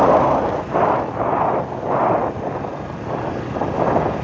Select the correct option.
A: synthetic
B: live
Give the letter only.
B